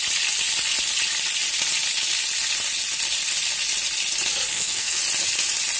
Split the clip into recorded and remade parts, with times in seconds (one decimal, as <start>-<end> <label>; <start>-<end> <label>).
0.0-4.5 recorded; 4.5-5.0 remade; 5.0-5.8 recorded